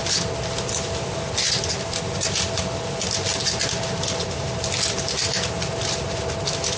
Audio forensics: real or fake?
real